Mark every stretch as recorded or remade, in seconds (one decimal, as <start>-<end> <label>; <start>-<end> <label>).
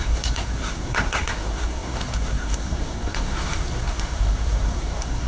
0.0-5.3 remade